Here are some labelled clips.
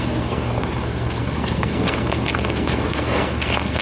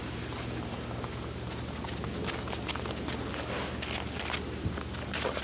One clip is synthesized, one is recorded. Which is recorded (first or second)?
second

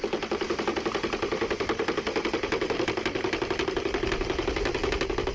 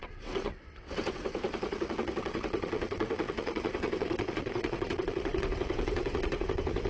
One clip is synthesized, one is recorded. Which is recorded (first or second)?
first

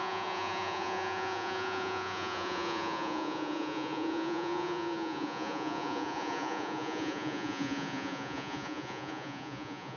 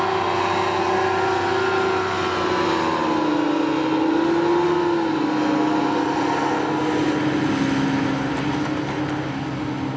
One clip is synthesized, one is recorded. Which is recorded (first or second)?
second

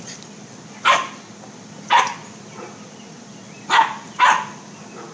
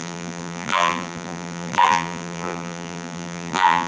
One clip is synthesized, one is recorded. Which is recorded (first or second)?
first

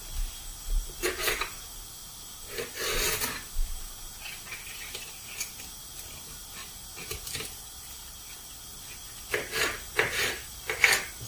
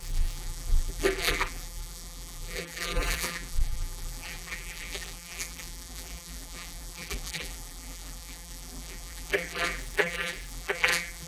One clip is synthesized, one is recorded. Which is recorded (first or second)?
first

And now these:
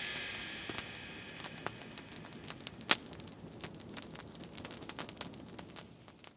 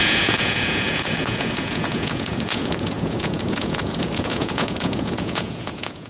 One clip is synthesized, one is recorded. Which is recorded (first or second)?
first